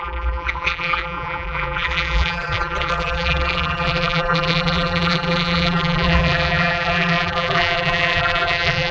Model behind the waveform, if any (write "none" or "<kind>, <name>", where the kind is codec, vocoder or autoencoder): vocoder, BigVGAN v2